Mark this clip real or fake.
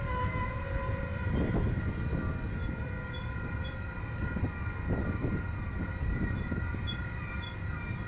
real